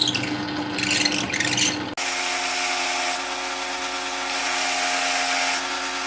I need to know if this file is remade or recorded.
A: recorded